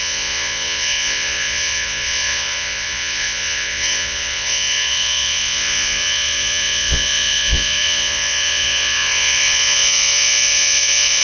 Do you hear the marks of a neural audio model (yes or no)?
yes